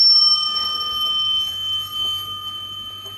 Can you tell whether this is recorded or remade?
remade